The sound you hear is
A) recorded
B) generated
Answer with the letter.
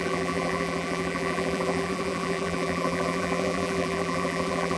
B